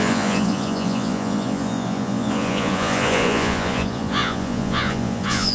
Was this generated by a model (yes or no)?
yes